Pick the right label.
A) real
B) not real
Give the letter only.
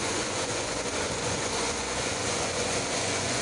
B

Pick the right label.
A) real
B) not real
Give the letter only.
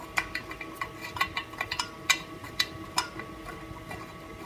A